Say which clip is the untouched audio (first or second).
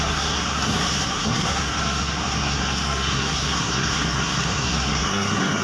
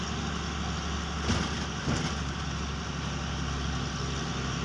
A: second